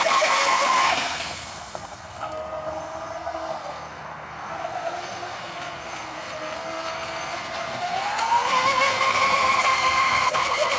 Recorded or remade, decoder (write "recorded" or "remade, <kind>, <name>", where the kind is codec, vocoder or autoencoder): remade, codec, SNAC